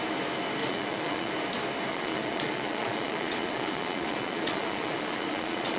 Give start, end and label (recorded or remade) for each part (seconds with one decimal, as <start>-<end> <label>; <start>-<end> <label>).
0.0-0.6 recorded; 0.6-1.3 remade; 1.3-1.9 recorded; 1.9-5.8 remade